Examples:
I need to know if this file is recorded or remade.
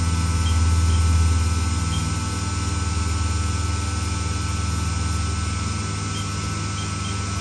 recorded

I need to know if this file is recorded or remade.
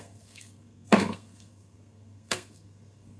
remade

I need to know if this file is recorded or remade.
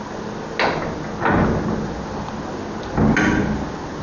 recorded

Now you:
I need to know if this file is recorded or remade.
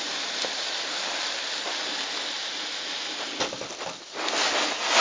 recorded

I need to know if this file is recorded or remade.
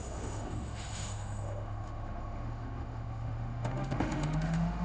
remade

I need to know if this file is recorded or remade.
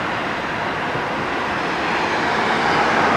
recorded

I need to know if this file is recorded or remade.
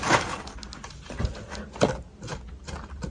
recorded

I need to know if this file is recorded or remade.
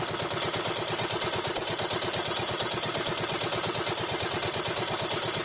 recorded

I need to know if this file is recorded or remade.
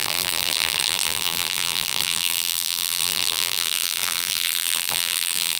remade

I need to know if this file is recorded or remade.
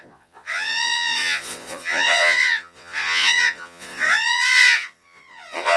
remade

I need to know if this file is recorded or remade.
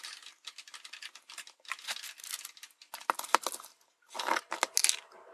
recorded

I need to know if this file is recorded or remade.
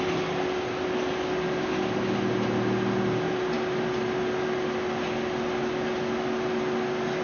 recorded